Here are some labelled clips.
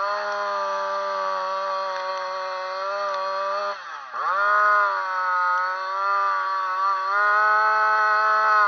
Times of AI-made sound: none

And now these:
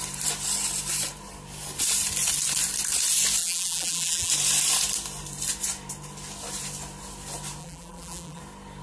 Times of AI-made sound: 3.4-4.3 (vocoder, BigVGAN v2); 7.6-8.4